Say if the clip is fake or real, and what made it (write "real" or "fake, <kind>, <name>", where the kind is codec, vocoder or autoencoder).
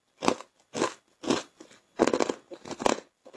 real